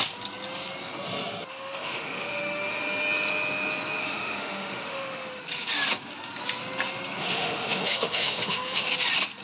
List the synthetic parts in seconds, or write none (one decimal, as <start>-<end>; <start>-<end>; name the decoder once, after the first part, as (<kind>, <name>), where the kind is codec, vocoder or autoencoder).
1.5-2.8 (autoencoder, DAC-VAE); 4.0-5.4; 7.2-8.9